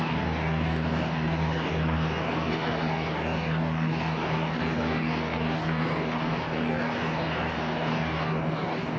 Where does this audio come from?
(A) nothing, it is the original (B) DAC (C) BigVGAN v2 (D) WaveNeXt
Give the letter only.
B